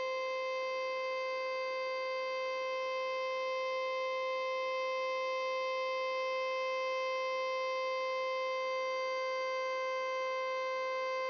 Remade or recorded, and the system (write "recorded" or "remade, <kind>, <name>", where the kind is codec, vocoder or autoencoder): recorded